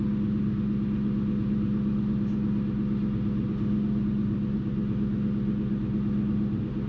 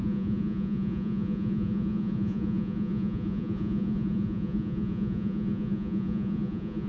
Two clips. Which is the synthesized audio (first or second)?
second